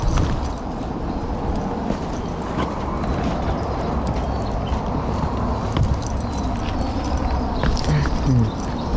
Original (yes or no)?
yes